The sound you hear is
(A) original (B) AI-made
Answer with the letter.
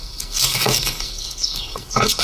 B